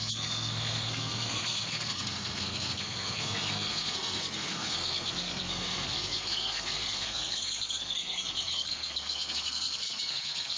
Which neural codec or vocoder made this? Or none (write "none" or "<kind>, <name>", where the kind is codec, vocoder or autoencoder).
codec, SNAC